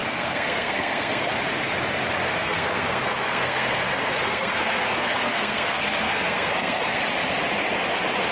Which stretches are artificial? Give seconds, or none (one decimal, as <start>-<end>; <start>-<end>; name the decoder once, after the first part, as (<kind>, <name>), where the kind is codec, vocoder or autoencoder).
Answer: 0.0-1.3 (codec, SNAC); 2.3-7.0